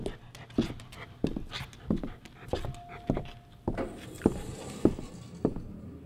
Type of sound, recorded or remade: recorded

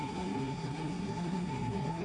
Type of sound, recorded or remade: remade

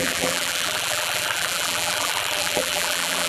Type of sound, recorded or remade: remade